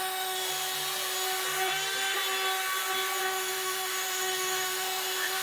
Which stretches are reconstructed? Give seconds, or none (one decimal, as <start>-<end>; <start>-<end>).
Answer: 0.0-0.5; 3.2-5.4